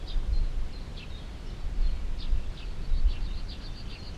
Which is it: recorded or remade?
recorded